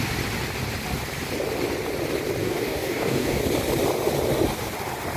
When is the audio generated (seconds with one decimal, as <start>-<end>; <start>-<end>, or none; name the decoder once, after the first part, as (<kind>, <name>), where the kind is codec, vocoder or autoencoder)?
2.4-3.4 (codec, DAC)